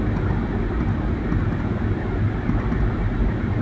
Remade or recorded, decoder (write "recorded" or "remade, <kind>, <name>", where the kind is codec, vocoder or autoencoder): recorded